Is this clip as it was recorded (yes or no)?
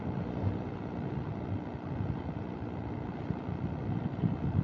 no